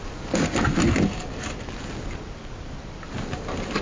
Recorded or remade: recorded